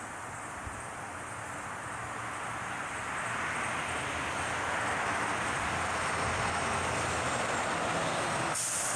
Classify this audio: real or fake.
real